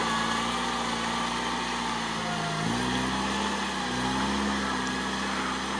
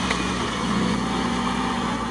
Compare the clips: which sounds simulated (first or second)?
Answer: second